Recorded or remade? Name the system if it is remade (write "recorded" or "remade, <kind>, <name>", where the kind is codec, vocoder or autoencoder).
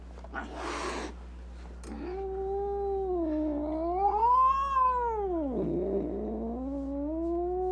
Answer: recorded